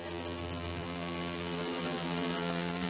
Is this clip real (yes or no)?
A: no